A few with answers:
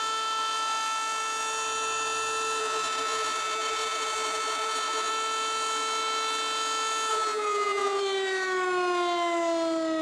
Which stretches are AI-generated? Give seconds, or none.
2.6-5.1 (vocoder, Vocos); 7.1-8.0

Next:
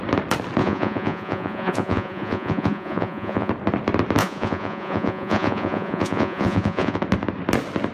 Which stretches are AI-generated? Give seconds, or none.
0.6-3.5 (vocoder, Vocos); 4.2-7.0